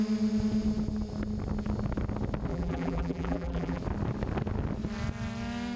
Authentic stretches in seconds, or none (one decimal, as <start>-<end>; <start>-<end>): 0.0-2.5; 3.8-5.8